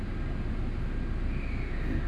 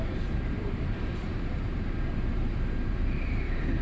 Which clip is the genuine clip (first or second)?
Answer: first